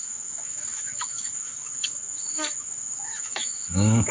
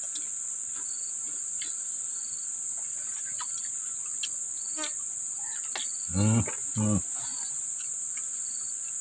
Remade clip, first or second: first